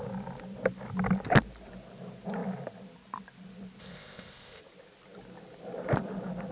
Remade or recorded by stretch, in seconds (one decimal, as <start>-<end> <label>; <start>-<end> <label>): 0.0-3.8 recorded; 3.8-4.6 remade; 4.6-6.5 recorded